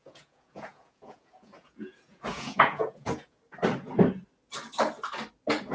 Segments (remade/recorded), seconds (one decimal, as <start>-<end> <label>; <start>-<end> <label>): 0.0-3.4 remade; 3.4-5.7 recorded